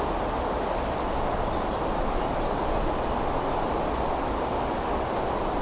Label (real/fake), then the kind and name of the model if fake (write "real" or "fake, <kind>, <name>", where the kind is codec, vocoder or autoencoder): real